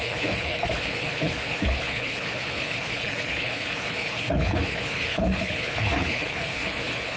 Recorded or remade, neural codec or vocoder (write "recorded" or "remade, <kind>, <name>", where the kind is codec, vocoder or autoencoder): remade, codec, HILCodec